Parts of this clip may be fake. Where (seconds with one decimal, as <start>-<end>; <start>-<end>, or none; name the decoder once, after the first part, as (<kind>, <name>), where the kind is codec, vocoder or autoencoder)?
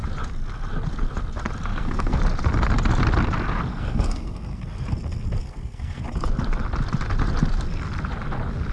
1.7-2.2 (codec, SNAC); 3.7-4.6; 5.4-6.0